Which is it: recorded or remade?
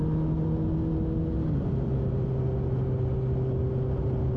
recorded